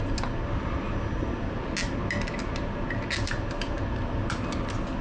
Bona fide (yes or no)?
yes